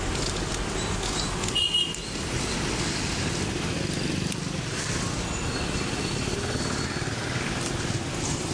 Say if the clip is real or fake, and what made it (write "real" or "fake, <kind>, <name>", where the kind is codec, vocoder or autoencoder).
real